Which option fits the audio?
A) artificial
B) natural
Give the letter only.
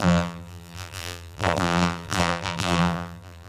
A